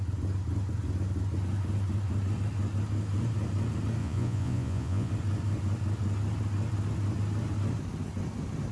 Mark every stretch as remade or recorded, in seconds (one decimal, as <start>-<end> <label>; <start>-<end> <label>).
0.0-4.0 recorded; 4.0-5.1 remade; 5.1-8.7 recorded